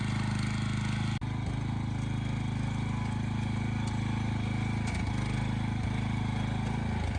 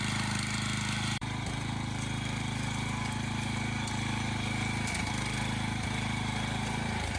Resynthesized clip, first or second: second